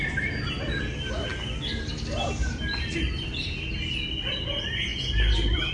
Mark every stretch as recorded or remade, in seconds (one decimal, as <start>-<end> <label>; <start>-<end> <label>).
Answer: 0.0-5.7 recorded